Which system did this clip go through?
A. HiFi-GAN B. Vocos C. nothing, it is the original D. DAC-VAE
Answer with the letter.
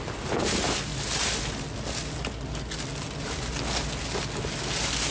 C